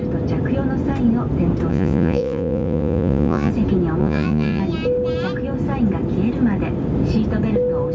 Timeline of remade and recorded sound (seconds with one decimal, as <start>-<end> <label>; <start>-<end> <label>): 0.0-1.7 recorded; 1.7-3.5 remade; 3.5-4.0 recorded; 4.0-4.6 remade; 4.6-7.9 recorded